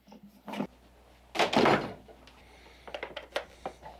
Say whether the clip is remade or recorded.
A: recorded